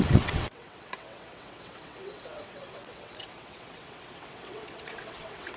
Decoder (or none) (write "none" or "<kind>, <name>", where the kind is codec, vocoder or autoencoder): vocoder, WaveNeXt